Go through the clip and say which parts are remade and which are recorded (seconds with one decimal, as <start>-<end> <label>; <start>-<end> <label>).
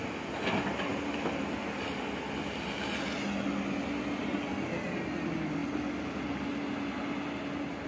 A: 0.0-7.9 recorded